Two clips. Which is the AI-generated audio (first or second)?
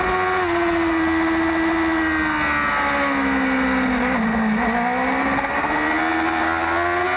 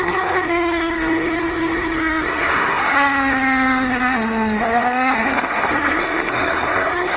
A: second